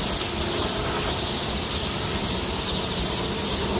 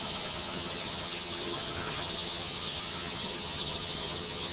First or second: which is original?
first